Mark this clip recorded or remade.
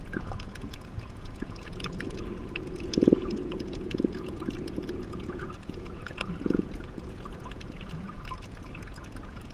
remade